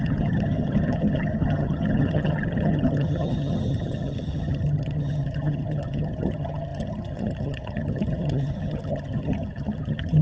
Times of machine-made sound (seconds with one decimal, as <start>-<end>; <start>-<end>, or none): 0.0-10.2

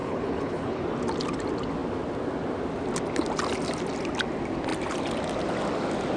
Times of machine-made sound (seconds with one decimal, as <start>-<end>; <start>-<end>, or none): 0.0-0.8

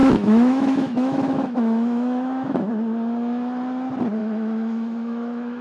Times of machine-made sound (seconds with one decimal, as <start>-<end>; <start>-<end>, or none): 0.0-2.7; 4.2-5.6

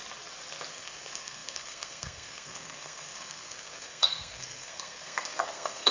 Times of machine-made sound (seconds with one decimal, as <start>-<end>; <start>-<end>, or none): 0.7-5.9

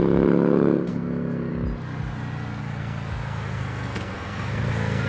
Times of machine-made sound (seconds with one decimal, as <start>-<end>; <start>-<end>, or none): 0.0-1.5; 2.6-5.1